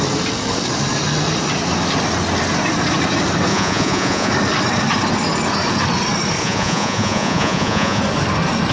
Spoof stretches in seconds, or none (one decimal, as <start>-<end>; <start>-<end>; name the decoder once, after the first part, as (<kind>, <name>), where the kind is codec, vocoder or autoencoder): 3.5-4.3 (vocoder, Vocos); 6.4-8.0